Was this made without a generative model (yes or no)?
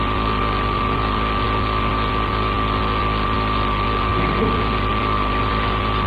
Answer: yes